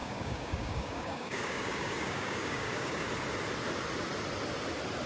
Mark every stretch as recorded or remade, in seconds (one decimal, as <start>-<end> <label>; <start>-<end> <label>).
0.0-3.1 remade; 3.1-5.1 recorded